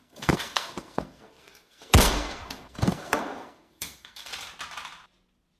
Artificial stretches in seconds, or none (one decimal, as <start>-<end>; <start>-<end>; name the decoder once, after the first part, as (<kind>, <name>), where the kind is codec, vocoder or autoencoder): 0.0-4.3 (codec, SNAC)